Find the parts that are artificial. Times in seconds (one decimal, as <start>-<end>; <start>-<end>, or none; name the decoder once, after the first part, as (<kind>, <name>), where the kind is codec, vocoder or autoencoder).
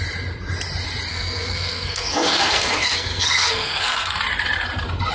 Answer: 1.1-4.2 (codec, SNAC)